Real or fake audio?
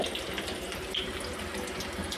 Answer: real